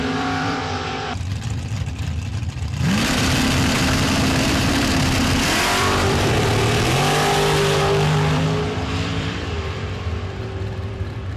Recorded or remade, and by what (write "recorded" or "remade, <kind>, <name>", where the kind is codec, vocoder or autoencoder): remade, vocoder, BigVGAN v2